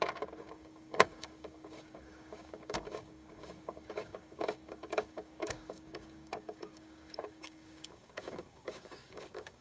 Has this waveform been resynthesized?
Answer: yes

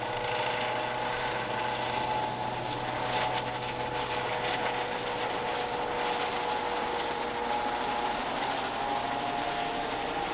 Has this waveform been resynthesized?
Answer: no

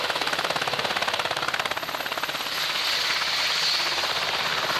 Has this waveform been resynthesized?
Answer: no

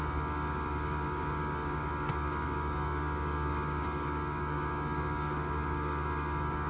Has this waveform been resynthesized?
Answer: yes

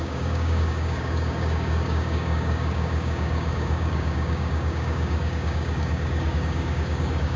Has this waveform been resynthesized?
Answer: yes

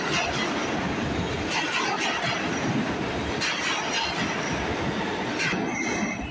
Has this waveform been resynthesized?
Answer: no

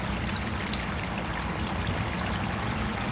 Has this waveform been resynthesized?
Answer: no